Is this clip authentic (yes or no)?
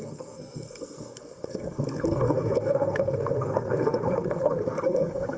no